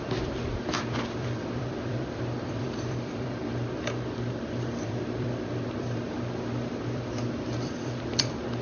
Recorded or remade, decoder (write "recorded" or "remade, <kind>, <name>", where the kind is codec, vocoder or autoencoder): remade, vocoder, BigVGAN v2